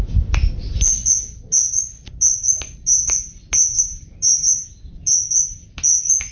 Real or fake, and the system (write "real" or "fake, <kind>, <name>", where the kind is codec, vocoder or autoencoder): real